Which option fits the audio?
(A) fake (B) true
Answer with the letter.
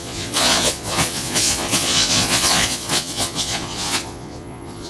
A